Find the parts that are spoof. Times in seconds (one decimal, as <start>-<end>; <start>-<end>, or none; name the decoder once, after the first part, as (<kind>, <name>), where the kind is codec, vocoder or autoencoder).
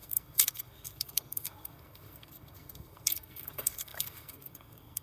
0.0-5.0 (codec, SNAC)